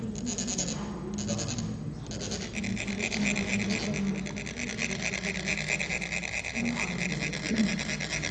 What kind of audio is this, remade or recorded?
recorded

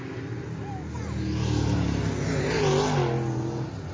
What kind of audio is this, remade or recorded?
recorded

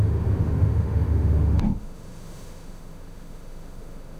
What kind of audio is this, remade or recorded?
remade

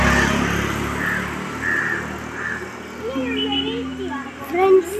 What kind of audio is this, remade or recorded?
recorded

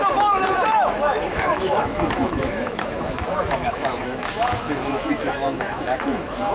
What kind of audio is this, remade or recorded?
remade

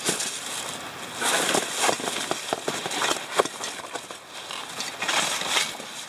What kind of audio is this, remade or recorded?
recorded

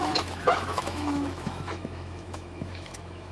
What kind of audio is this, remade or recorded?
remade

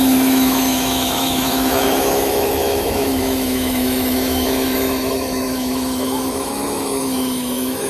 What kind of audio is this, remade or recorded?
remade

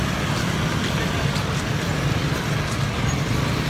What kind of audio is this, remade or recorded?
recorded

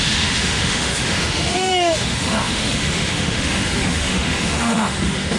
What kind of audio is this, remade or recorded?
remade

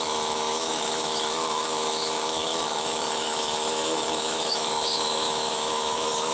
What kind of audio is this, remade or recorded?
remade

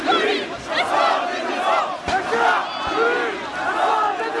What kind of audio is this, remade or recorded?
recorded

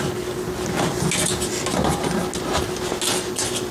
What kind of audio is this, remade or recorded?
recorded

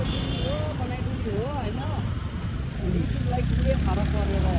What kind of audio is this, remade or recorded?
recorded